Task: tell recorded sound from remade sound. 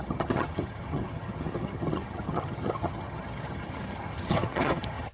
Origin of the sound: remade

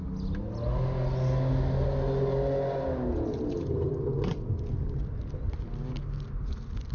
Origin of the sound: recorded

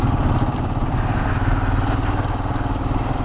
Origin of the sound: recorded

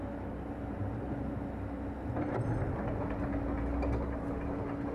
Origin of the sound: recorded